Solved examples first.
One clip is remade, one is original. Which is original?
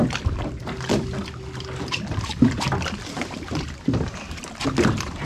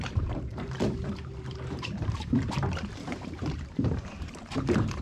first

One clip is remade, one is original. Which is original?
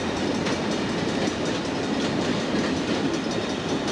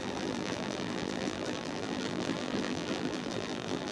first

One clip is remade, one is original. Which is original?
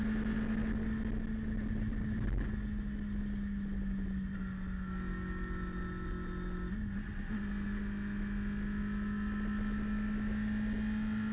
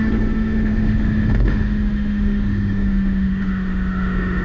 first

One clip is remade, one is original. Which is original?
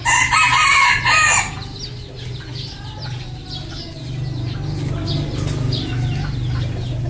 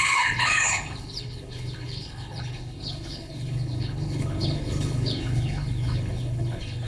first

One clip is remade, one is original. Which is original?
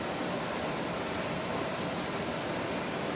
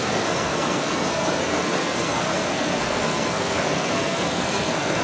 first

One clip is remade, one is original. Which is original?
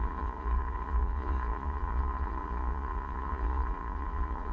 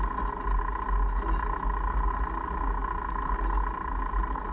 second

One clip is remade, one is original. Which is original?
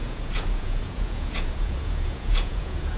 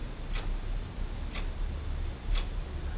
second